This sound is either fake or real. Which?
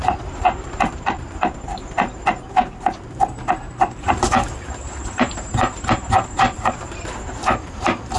fake